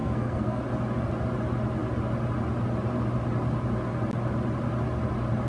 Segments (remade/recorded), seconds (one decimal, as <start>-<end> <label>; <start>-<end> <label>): 0.0-0.6 remade; 0.6-5.5 recorded